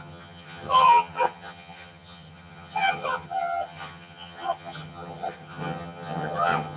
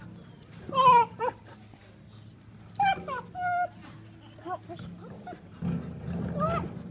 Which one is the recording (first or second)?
second